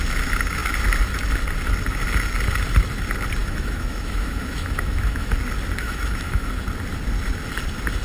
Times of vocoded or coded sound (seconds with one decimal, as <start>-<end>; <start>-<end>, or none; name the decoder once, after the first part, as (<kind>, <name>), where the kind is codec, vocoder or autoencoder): 3.4-5.3 (autoencoder, DAC-VAE); 5.8-6.5